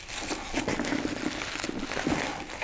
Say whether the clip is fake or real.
real